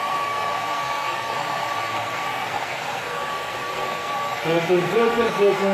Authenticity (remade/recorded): remade